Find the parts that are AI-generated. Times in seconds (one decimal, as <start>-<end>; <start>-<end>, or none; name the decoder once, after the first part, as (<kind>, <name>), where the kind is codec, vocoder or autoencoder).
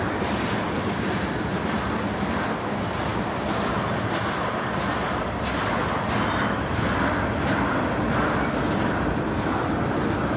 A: none